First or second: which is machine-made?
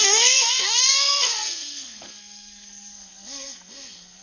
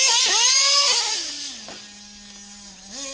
first